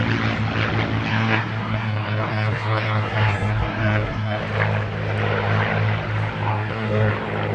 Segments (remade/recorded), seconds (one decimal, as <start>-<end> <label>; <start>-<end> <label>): 0.0-1.1 recorded; 1.1-4.4 remade; 4.4-6.5 recorded; 6.5-7.1 remade; 7.1-7.5 recorded